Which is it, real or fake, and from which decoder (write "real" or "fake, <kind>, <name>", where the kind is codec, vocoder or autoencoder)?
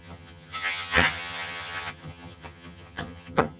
fake, vocoder, HiFi-GAN